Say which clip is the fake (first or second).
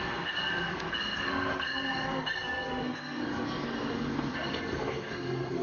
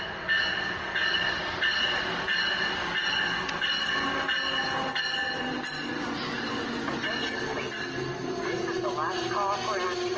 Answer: first